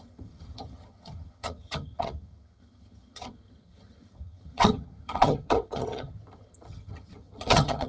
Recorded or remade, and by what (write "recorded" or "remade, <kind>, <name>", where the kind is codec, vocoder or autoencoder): remade, vocoder, HiFi-GAN